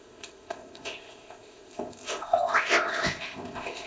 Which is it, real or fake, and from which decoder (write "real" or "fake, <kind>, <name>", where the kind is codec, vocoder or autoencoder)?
fake, codec, ZipCodec